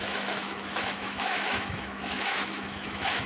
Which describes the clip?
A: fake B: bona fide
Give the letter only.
A